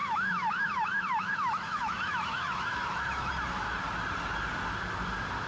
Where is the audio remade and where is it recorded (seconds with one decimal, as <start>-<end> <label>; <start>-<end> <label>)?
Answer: 0.0-3.3 remade; 3.3-5.5 recorded